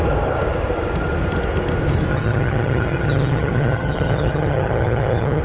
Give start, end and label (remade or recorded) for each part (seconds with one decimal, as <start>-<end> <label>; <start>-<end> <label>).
0.0-2.1 recorded; 2.1-5.4 remade